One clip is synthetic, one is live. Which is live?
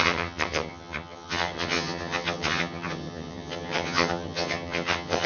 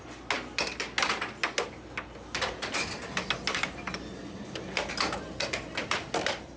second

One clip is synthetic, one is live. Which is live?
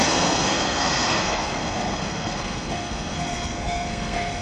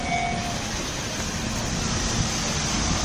second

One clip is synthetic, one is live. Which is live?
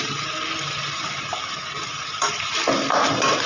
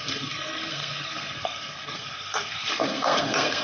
first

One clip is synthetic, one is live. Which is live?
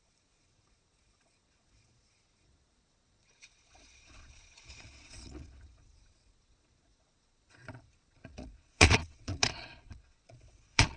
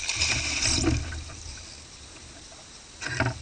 second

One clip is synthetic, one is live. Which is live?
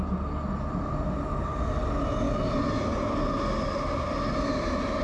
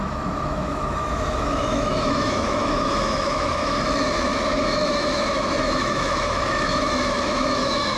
first